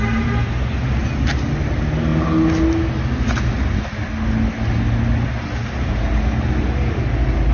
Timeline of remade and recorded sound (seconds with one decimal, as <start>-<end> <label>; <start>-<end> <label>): 0.0-7.5 recorded